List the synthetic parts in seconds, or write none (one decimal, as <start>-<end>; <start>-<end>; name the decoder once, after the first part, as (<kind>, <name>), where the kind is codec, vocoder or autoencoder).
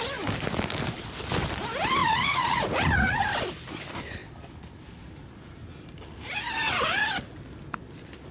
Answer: 2.0-3.3 (vocoder, Vocos)